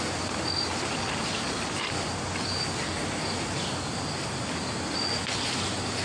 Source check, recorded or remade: recorded